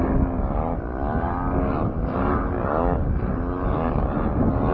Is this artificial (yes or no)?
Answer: no